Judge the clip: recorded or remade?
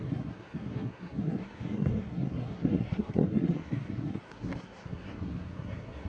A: remade